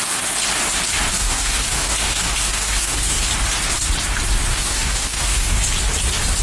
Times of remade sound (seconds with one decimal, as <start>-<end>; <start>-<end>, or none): 1.1-3.3; 4.5-5.7